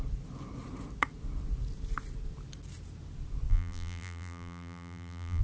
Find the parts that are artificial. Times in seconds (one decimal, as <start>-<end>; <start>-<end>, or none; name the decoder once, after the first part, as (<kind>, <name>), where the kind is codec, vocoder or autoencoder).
3.5-5.4 (vocoder, BigVGAN v2)